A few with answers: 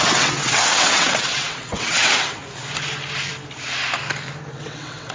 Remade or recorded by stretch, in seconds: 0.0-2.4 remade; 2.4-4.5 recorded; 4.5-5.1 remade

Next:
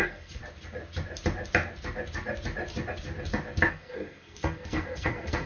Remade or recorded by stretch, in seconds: 0.0-0.4 remade; 0.4-3.7 recorded; 3.7-5.5 remade